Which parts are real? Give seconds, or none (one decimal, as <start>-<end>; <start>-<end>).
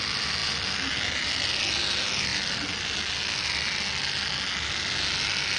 0.0-5.6